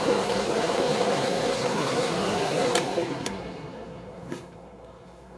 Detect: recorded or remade remade